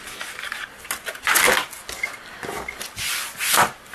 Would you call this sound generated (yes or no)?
no